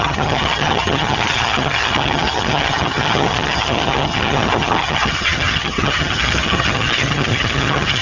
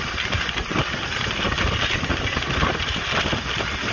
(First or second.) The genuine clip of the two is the second